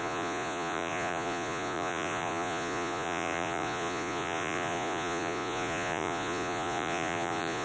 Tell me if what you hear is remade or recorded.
remade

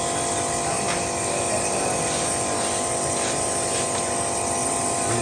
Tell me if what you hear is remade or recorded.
recorded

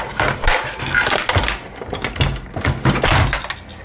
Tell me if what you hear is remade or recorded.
recorded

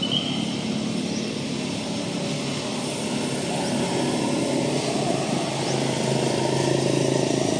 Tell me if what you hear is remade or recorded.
recorded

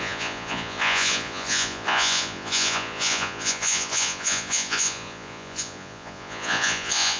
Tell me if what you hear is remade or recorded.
remade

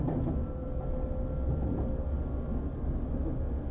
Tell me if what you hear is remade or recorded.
recorded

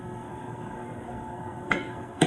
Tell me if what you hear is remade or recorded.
remade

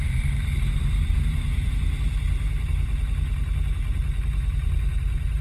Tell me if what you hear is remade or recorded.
remade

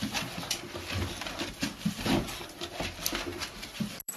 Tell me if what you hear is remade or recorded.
remade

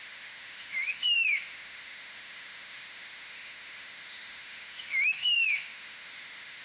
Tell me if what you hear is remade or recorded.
remade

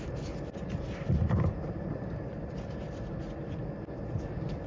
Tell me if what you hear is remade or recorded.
recorded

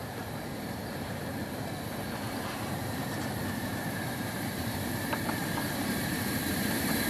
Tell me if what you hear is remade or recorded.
remade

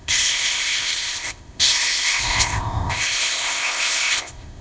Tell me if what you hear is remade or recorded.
remade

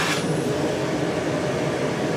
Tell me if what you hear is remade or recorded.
recorded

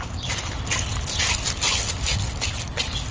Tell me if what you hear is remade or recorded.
recorded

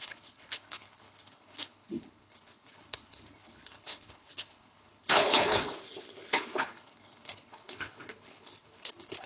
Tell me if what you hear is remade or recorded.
remade